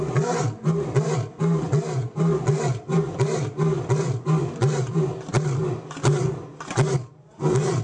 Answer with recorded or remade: recorded